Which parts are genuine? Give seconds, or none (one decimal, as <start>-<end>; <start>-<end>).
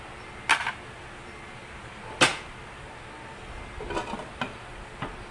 0.0-5.3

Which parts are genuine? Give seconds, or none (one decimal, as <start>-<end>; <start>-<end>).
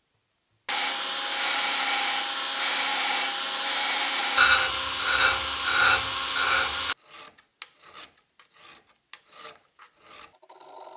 0.0-11.0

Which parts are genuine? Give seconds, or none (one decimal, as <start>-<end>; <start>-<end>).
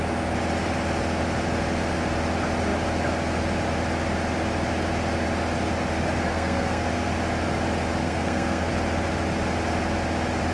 0.0-6.3; 7.1-8.0; 8.7-10.5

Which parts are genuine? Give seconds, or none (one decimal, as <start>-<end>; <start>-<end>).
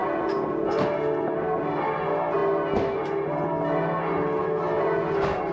0.0-5.5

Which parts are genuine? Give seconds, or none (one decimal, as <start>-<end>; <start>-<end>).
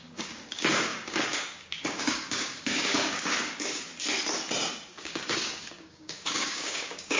3.9-4.7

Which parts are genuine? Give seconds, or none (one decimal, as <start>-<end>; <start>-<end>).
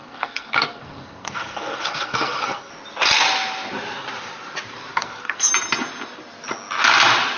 2.7-4.9; 5.5-7.4